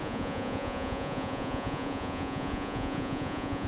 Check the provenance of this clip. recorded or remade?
remade